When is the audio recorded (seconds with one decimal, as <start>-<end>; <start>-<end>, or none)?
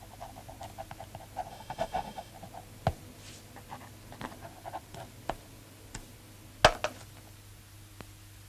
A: 0.0-1.5; 2.3-8.5